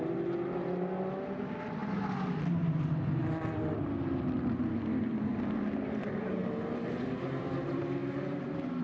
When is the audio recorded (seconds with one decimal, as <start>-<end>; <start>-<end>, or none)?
0.0-8.8